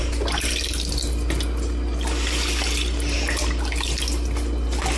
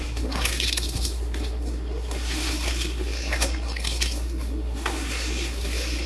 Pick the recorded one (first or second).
first